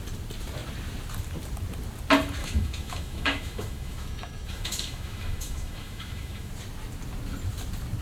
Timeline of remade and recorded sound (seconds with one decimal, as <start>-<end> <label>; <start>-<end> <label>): 0.0-2.4 recorded; 2.4-6.5 remade; 6.5-8.0 recorded